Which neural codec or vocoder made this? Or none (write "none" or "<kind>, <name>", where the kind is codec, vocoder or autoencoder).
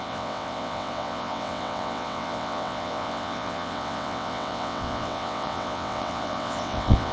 vocoder, WaveNeXt